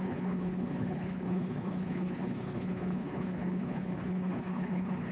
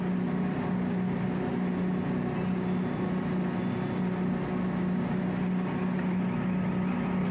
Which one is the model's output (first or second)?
first